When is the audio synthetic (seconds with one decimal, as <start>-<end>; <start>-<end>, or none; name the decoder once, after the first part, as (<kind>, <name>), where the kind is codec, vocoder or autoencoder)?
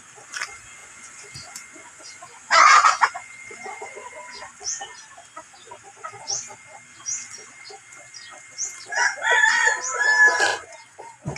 0.8-4.1 (vocoder, Vocos); 10.5-11.4